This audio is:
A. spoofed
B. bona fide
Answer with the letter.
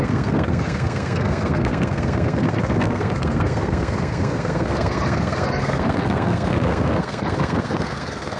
A